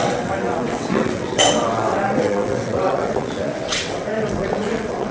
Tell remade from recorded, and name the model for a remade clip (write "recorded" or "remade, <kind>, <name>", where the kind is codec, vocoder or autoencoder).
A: remade, vocoder, WaveNeXt